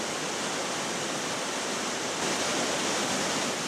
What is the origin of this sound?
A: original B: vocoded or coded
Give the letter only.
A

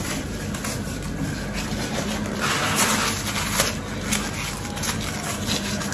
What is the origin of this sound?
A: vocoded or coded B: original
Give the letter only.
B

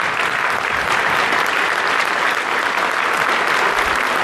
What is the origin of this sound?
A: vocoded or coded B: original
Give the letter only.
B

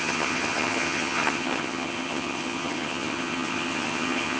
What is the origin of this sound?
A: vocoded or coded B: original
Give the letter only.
A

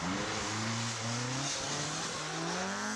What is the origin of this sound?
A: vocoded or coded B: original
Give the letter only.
B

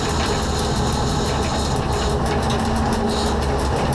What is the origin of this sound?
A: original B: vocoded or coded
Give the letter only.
A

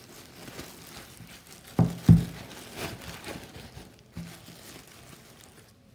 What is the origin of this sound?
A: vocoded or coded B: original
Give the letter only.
B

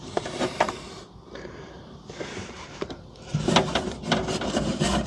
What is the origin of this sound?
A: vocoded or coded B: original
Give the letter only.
A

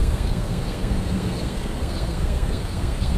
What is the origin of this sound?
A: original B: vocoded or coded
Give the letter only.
B